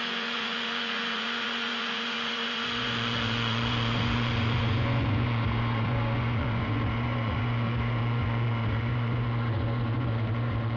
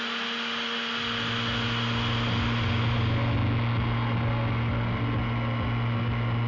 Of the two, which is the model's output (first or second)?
first